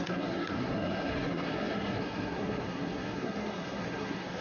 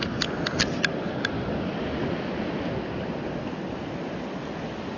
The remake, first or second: first